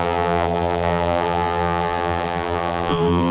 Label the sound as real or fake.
fake